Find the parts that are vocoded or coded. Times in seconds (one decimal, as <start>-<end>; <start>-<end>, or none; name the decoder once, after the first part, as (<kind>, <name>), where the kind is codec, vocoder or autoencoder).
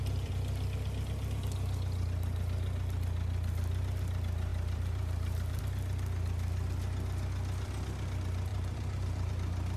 4.5-5.6 (vocoder, BigVGAN v2); 8.5-9.3